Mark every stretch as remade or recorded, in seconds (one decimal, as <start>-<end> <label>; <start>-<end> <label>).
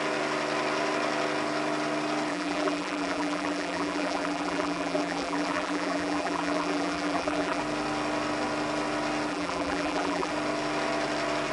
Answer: 0.0-2.3 recorded; 2.3-7.6 remade; 7.6-9.3 recorded; 9.3-10.3 remade; 10.3-11.5 recorded